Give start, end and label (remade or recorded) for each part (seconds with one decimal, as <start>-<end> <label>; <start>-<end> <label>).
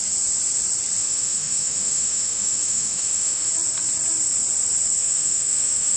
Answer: 0.0-1.0 recorded; 1.0-3.5 remade; 3.5-5.0 recorded; 5.0-6.0 remade